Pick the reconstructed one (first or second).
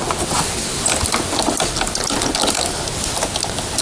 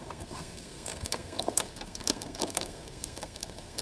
second